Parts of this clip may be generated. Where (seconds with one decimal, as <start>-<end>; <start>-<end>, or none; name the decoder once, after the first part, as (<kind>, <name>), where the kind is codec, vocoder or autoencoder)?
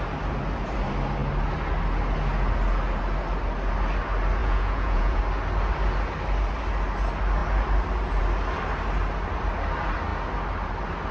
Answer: 4.4-5.2 (vocoder, Vocos)